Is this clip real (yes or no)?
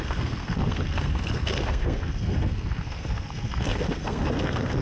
no